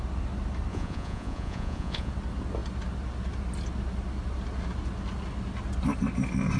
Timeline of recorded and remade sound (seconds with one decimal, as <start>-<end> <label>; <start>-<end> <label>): 0.0-0.7 recorded; 0.7-2.1 remade; 2.1-6.6 recorded